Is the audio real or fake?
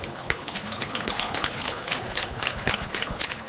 fake